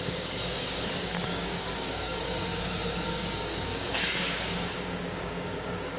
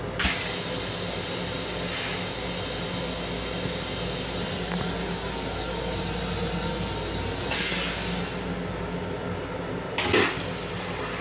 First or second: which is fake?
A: first